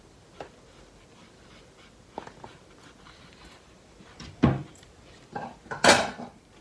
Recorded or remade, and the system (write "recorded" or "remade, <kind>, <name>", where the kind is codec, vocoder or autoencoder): recorded